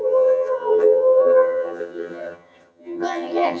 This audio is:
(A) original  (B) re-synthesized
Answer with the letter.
B